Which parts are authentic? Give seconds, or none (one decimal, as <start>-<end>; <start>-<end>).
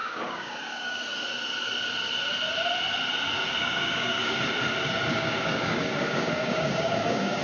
1.0-3.4; 4.4-5.1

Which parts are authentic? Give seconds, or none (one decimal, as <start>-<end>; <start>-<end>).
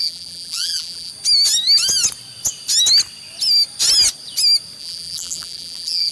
1.1-4.8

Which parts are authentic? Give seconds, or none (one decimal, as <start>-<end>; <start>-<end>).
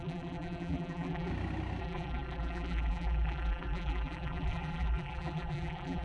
1.3-1.8